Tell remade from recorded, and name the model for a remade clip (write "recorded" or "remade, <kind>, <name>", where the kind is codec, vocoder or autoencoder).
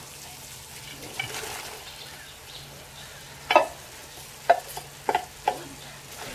recorded